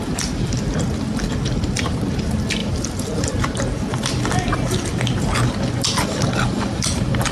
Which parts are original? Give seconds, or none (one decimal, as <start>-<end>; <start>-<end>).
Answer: 0.0-2.6; 3.5-7.3